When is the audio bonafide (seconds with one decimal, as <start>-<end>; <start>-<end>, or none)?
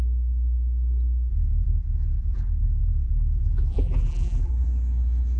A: 0.0-1.3; 4.5-5.4